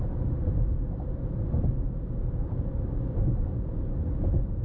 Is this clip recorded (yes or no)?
yes